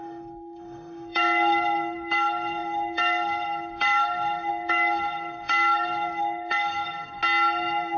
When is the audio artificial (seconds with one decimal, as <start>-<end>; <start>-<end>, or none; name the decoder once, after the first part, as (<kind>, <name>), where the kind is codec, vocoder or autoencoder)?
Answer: 0.0-7.2 (codec, DAC)